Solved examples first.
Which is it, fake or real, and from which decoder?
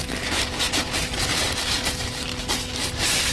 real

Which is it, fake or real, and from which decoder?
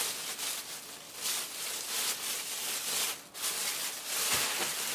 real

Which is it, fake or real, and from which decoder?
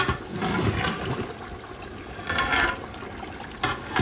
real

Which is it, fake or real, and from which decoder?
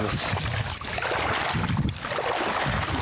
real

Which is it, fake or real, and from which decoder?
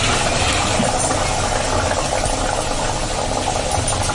real